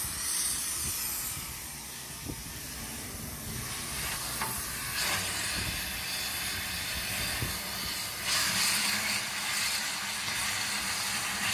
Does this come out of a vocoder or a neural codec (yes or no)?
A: no